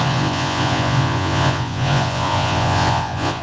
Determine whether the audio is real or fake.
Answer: fake